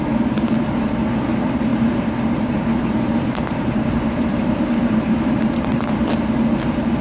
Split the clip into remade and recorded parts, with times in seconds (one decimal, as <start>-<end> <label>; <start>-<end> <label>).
0.0-1.7 recorded; 1.7-5.9 remade; 5.9-7.0 recorded